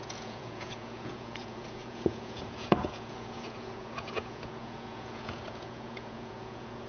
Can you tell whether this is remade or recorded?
remade